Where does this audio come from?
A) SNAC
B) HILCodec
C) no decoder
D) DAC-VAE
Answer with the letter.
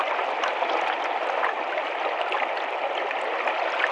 C